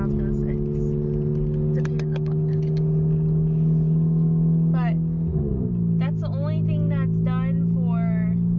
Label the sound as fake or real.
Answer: real